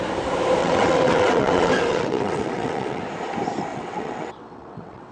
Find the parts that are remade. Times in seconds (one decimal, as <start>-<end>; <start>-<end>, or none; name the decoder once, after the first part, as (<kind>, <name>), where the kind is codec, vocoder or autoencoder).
0.6-3.0 (vocoder, WaveNeXt); 3.7-5.1